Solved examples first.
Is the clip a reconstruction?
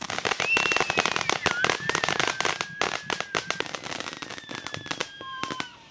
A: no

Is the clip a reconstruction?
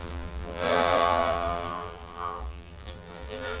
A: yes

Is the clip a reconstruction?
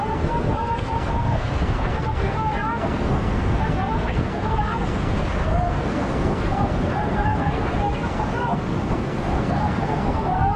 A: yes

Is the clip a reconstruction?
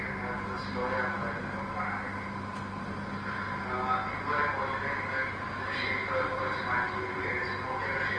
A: no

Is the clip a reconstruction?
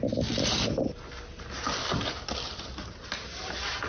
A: no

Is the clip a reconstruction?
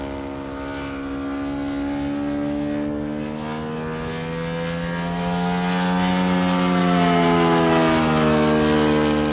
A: no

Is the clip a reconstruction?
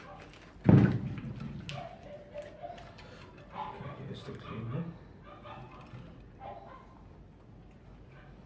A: no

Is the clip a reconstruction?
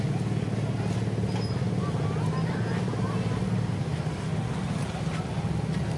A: no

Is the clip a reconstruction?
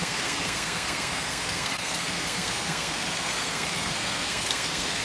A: yes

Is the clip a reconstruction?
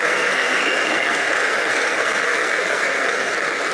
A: yes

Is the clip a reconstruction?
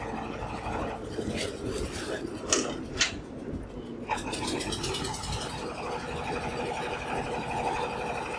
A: no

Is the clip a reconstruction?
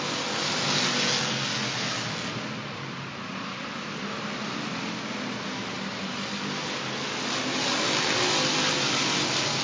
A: no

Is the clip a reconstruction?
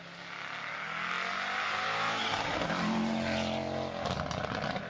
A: no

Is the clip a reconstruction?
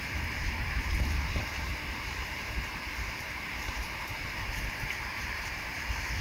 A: yes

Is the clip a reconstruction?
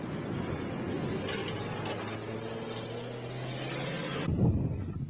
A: no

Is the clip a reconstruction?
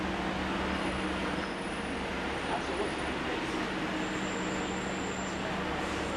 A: no